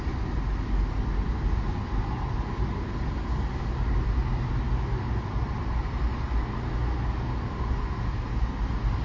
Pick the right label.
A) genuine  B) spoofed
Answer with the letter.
A